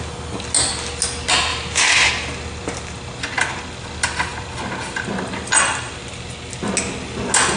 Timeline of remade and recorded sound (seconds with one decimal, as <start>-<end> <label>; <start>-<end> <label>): 0.0-1.5 recorded; 1.5-2.1 remade; 2.1-7.6 recorded